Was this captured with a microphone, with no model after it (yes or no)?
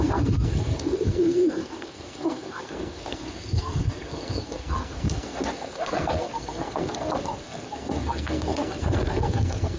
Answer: no